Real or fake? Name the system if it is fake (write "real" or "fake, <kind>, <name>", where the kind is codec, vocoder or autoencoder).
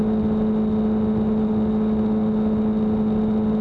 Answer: real